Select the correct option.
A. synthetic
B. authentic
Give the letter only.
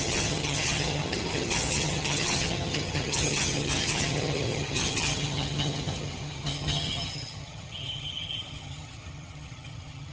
A